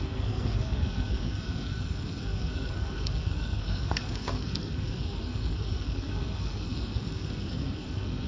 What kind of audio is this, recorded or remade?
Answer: remade